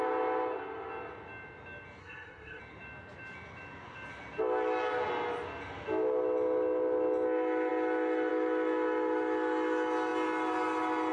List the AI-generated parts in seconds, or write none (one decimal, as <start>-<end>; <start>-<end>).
2.0-2.6